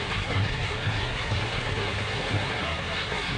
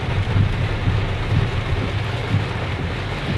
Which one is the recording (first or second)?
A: second